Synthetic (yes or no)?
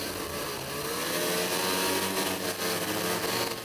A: no